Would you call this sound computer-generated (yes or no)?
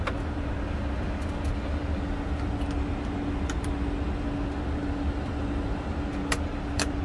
no